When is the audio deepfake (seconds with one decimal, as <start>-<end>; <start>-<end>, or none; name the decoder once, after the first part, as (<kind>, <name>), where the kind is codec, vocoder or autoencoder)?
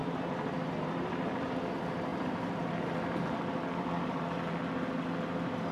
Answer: 2.1-4.6 (vocoder, BigVGAN v2)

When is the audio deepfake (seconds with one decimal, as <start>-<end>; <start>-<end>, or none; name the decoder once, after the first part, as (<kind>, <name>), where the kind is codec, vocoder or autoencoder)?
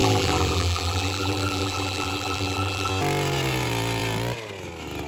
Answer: 0.0-2.9 (vocoder, BigVGAN v2)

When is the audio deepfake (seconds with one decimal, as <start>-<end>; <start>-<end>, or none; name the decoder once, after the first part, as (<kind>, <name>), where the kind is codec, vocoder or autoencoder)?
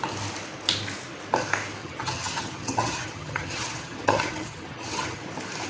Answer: 1.8-5.2 (vocoder, HiFi-GAN)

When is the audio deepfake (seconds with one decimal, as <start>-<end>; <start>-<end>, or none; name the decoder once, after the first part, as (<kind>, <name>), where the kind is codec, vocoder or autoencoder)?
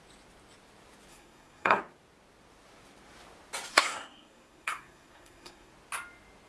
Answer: 1.1-1.8 (codec, SNAC); 3.7-5.7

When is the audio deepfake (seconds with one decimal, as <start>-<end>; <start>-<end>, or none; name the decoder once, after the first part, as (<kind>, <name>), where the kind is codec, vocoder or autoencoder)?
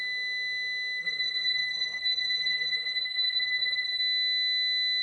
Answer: 1.0-4.0 (codec, SNAC)